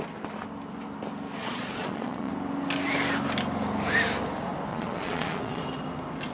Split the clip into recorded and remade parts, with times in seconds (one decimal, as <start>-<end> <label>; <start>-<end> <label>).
0.0-1.4 recorded; 1.4-2.3 remade; 2.3-4.7 recorded; 4.7-5.6 remade; 5.6-6.3 recorded